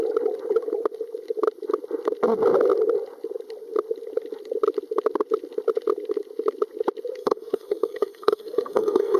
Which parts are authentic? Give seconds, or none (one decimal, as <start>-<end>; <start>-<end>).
0.0-7.2